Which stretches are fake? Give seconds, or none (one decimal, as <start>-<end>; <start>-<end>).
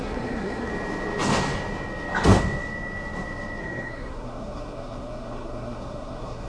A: 0.0-0.7; 3.6-6.5